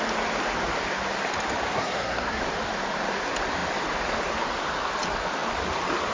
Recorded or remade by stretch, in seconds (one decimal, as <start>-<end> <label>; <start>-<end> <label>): 0.0-1.7 recorded; 1.7-2.4 remade; 2.4-6.1 recorded